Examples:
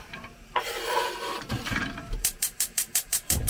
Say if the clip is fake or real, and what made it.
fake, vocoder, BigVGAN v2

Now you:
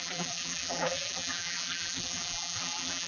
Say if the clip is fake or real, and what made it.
fake, vocoder, BigVGAN v2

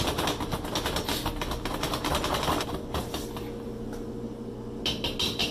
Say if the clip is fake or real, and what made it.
real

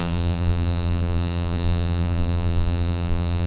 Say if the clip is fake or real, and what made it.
fake, vocoder, BigVGAN v2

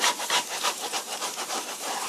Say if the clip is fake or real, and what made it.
fake, vocoder, BigVGAN v2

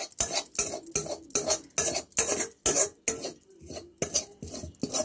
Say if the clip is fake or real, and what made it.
real